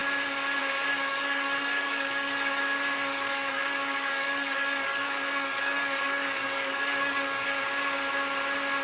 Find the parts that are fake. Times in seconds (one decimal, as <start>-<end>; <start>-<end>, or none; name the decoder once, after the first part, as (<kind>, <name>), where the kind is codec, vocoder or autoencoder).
1.1-2.6 (codec, DAC); 3.1-7.6